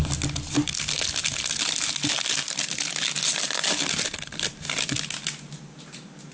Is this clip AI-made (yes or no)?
no